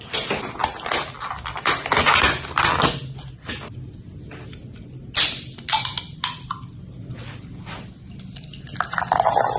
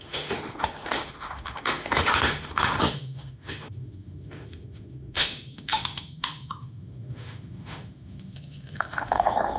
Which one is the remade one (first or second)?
second